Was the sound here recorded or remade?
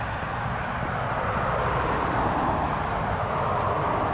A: recorded